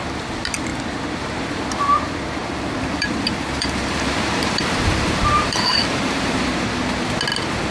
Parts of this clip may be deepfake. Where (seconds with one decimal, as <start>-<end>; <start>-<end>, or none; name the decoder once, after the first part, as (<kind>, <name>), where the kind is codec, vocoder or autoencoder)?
2.4-6.3 (vocoder, BigVGAN v2)